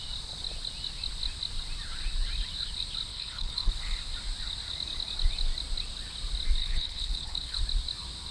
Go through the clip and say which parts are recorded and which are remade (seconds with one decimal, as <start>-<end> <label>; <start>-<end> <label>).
0.0-3.1 recorded; 3.1-3.7 remade; 3.7-6.6 recorded; 6.6-7.6 remade; 7.6-8.3 recorded